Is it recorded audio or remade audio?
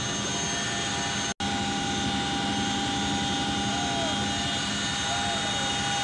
recorded